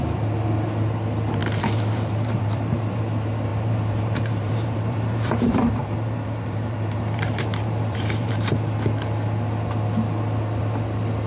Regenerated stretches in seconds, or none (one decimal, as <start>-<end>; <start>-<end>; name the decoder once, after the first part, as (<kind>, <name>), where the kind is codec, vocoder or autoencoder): 1.4-3.0 (vocoder, BigVGAN v2); 3.5-8.5